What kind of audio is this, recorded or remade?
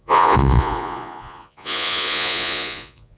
remade